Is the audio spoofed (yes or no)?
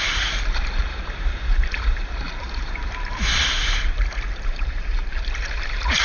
yes